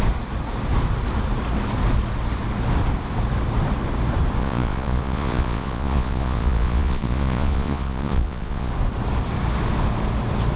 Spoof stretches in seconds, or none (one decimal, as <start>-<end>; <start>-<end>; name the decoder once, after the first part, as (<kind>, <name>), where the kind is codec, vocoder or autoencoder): 4.4-8.7 (vocoder, Vocos)